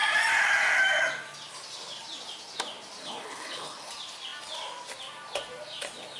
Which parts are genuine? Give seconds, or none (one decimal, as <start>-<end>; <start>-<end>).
0.0-3.0; 3.9-6.2